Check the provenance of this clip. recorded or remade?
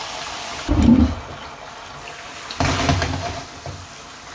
recorded